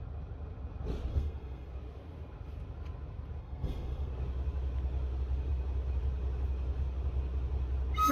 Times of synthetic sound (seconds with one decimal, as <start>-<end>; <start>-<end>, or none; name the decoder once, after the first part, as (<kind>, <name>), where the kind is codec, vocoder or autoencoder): 1.1-1.7 (codec, SNAC); 3.4-4.1